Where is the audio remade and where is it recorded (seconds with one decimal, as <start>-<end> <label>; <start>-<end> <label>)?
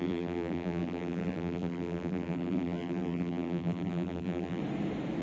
0.0-4.6 remade; 4.6-5.2 recorded